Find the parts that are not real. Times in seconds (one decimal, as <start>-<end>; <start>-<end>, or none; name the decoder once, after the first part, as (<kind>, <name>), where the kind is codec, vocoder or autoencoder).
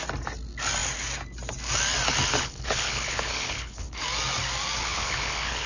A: 2.3-4.0 (codec, HILCodec); 4.8-5.7